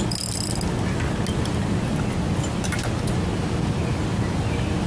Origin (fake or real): real